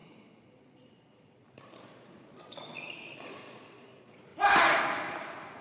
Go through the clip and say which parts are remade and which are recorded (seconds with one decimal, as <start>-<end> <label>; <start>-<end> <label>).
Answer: 0.0-4.3 remade; 4.3-5.6 recorded